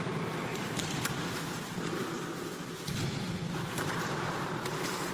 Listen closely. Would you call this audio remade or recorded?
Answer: remade